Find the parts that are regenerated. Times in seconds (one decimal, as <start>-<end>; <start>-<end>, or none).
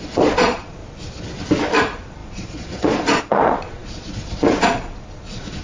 0.0-0.8; 1.8-5.6